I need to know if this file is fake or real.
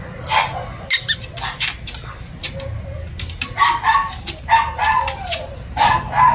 real